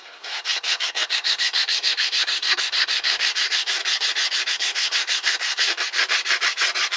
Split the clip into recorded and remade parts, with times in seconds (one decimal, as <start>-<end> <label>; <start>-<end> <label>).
0.0-3.8 remade; 3.8-4.5 recorded; 4.5-5.7 remade; 5.7-7.0 recorded